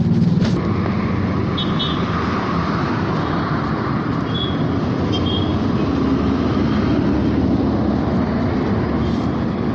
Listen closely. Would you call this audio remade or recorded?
recorded